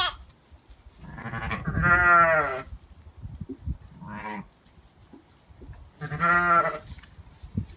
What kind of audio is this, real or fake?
real